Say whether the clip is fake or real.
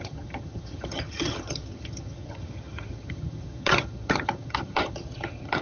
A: fake